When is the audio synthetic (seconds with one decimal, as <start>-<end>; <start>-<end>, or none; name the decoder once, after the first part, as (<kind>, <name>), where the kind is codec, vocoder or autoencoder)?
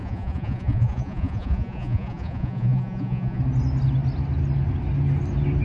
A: 0.0-3.4 (vocoder, Vocos)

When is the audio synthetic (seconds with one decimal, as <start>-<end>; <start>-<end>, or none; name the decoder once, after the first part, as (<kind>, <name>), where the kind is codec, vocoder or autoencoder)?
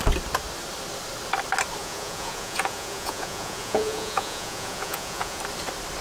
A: 1.8-5.4 (vocoder, Vocos)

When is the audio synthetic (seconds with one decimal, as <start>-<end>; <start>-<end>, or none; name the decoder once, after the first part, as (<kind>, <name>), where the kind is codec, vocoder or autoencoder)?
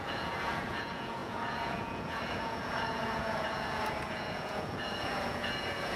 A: 0.0-6.0 (vocoder, Vocos)